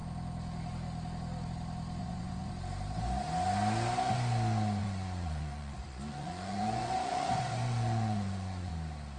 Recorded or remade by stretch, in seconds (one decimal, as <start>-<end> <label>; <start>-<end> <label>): 0.0-2.0 recorded; 2.0-2.5 remade; 2.5-4.8 recorded; 4.8-8.7 remade; 8.7-9.2 recorded